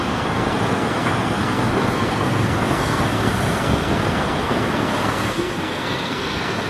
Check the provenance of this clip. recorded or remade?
remade